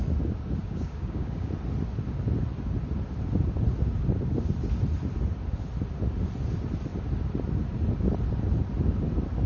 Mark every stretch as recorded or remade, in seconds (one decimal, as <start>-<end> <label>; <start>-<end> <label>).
0.0-0.6 recorded; 0.6-1.5 remade; 1.5-9.5 recorded